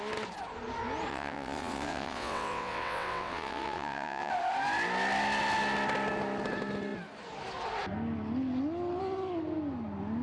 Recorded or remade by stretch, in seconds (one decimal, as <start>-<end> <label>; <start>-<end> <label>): 0.0-1.1 recorded; 1.1-4.3 remade; 4.3-10.2 recorded